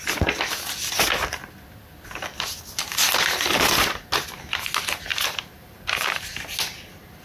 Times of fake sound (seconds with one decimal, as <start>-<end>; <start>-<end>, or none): 5.1-6.3